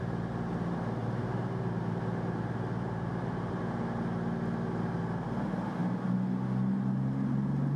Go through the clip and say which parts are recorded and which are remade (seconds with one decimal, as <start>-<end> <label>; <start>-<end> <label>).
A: 0.0-1.0 recorded; 1.0-3.6 remade; 3.6-7.8 recorded